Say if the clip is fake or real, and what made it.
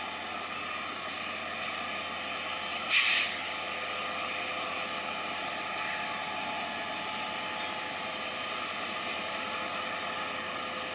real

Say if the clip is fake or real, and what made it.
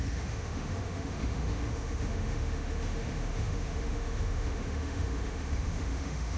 fake, autoencoder, DAC-VAE